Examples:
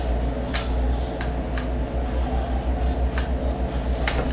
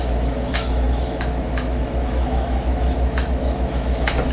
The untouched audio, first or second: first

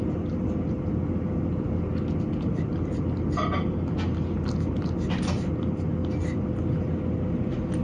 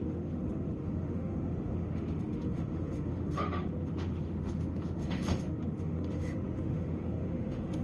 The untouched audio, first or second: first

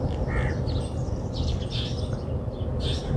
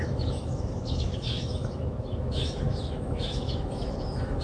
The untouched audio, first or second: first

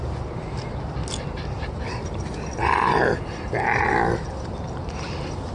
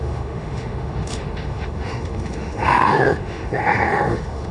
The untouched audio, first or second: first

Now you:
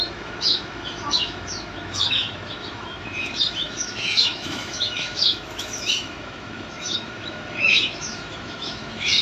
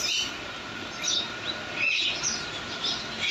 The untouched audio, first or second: second